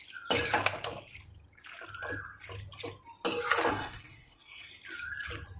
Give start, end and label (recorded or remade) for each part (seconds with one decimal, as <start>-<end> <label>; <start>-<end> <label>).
0.0-3.7 recorded; 3.7-4.7 remade; 4.7-5.6 recorded